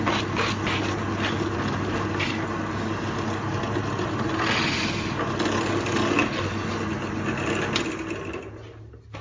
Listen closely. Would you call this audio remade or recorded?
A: recorded